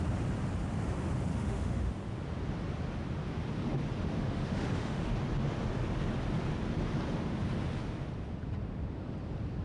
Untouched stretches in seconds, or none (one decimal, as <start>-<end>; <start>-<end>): 0.0-1.3; 1.9-4.2; 5.1-9.6